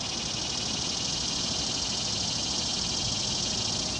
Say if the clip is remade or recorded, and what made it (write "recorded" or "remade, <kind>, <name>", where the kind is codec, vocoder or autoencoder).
recorded